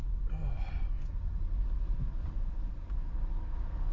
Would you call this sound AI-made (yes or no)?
no